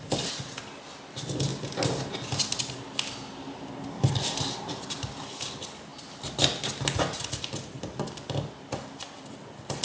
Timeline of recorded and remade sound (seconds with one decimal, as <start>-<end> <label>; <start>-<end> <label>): 0.0-9.8 recorded